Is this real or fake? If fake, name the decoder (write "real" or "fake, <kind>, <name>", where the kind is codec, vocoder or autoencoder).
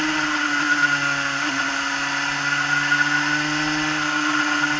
real